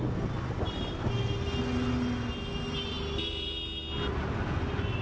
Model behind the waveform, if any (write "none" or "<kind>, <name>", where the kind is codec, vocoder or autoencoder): none